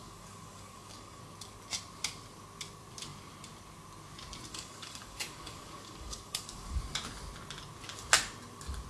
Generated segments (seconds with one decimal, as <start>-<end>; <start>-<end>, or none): 0.0-1.2; 4.5-6.8